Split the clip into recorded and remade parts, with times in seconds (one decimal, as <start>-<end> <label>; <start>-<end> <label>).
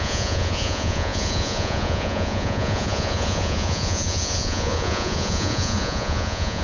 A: 0.0-6.6 remade